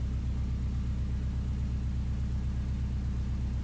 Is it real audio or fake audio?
real